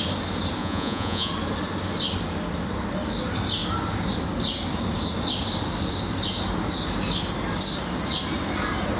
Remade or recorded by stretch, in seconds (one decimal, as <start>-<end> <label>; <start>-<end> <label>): 0.0-0.6 recorded; 0.6-1.3 remade; 1.3-9.0 recorded